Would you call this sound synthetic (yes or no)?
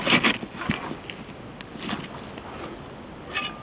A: no